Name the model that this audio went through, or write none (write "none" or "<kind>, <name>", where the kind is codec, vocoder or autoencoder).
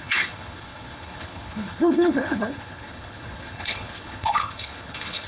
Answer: codec, HILCodec